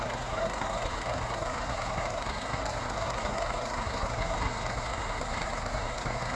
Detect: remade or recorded remade